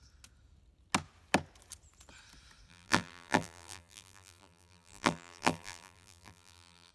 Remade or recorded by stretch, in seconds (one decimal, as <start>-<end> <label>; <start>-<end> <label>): 0.0-2.7 recorded; 2.7-6.9 remade